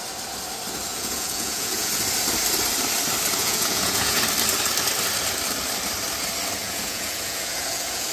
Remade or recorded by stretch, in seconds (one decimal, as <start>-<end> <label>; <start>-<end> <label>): 0.0-0.9 recorded; 0.9-1.9 remade; 1.9-3.4 recorded; 3.4-4.2 remade; 4.2-6.6 recorded; 6.6-8.1 remade